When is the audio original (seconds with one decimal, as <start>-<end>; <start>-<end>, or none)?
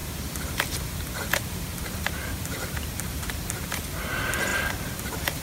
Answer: 0.0-1.7; 3.8-4.5